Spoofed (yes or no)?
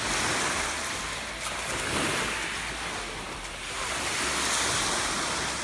no